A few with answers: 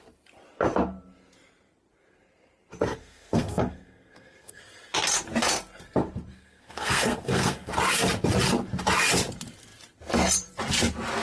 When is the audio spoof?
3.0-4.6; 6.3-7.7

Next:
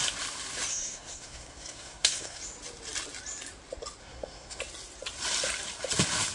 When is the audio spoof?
0.7-2.4; 4.0-4.6

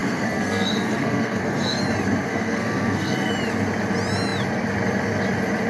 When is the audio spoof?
0.0-1.8; 2.3-3.3

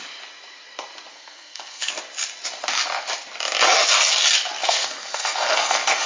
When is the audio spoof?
1.1-1.9; 4.6-6.1

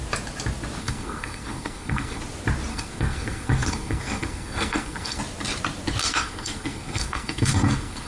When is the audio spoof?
0.8-2.2; 2.7-5.2; 6.0-8.1

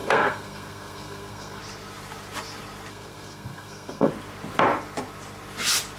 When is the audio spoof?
0.0-1.6; 2.9-4.1

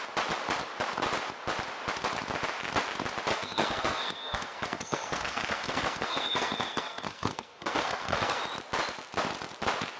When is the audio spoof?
3.3-8.4